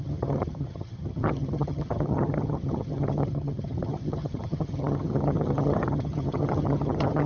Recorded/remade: remade